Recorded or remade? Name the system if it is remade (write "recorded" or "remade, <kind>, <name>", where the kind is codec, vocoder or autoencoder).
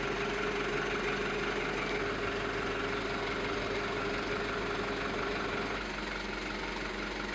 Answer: recorded